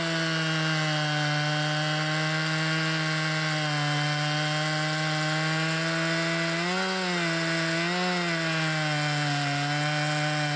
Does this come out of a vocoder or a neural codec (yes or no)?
no